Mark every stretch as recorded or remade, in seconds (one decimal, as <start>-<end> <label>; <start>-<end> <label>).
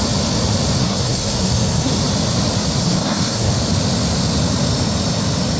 0.0-0.8 recorded; 0.8-1.9 remade; 1.9-2.8 recorded; 2.8-3.5 remade; 3.5-5.6 recorded